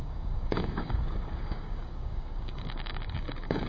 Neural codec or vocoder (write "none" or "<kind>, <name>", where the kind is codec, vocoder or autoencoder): codec, DAC